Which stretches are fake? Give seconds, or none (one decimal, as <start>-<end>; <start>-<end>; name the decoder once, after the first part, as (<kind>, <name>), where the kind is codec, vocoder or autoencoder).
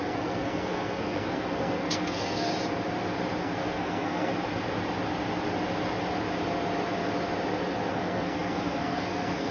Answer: 0.0-2.5 (codec, SNAC); 3.4-4.3; 7.9-9.5